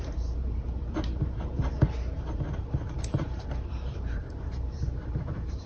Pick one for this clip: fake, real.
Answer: fake